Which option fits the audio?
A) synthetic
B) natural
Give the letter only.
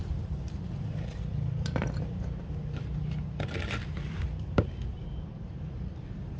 A